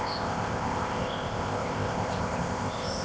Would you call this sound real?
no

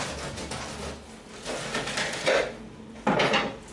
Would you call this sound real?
yes